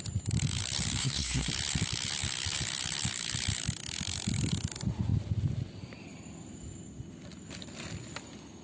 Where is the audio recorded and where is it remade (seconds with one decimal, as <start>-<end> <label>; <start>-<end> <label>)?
0.0-1.0 recorded; 1.0-1.5 remade; 1.5-8.6 recorded